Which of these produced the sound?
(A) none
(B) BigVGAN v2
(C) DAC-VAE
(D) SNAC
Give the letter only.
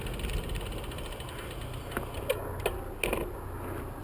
A